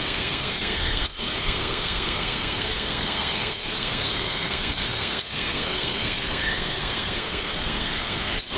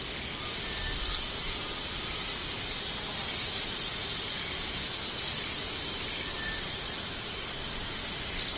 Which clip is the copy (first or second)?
first